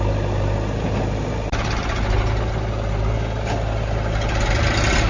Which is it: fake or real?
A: real